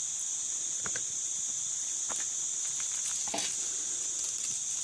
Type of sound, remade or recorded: recorded